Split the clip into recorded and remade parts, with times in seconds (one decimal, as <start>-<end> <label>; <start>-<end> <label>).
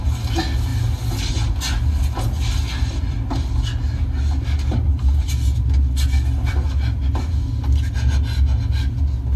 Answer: 0.0-4.7 recorded; 4.7-5.3 remade; 5.3-9.4 recorded